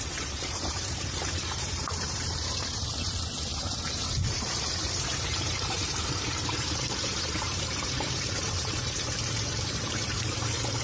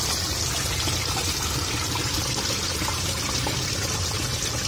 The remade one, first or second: first